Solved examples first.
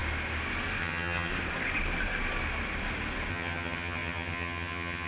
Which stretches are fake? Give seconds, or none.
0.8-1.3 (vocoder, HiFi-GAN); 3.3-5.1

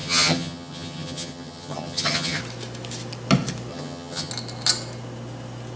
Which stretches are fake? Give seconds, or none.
0.0-2.4 (vocoder, HiFi-GAN); 3.7-4.3

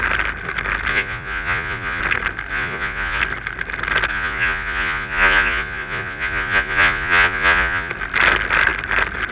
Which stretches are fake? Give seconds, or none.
0.9-2.0 (vocoder, Vocos); 2.5-3.2; 4.1-7.9

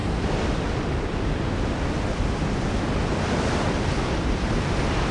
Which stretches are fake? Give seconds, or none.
3.1-5.1 (vocoder, BigVGAN v2)